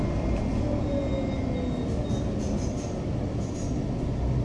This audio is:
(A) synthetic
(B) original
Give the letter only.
B